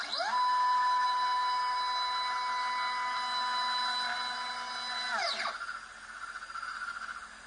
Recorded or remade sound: recorded